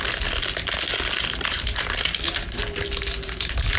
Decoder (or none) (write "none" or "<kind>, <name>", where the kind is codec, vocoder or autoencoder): none